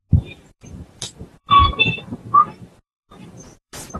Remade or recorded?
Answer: remade